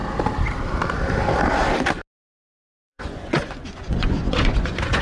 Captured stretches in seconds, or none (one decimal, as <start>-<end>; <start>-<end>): 0.0-2.6